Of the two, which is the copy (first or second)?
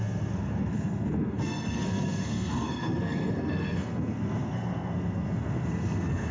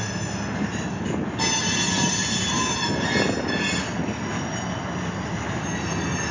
first